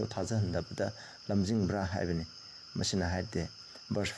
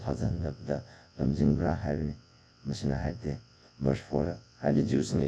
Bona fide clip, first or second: first